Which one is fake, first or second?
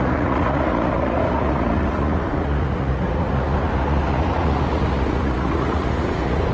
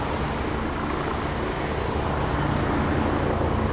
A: first